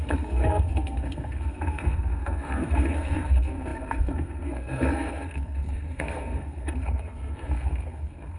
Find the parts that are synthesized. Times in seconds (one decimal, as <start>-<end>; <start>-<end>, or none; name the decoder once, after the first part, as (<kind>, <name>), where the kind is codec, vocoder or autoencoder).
0.0-8.4 (codec, SNAC)